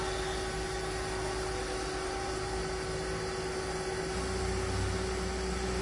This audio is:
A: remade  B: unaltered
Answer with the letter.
B